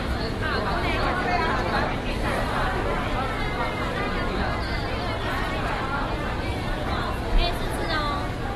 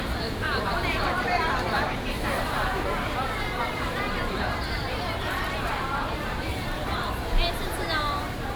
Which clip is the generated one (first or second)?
second